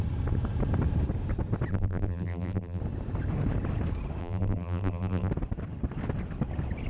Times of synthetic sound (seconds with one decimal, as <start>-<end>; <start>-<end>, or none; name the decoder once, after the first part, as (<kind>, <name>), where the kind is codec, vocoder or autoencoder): 1.7-2.8 (vocoder, BigVGAN v2); 4.2-5.3